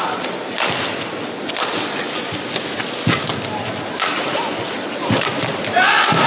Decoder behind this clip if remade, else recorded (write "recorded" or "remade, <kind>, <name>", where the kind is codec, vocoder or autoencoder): recorded